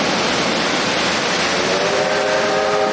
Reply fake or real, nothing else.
real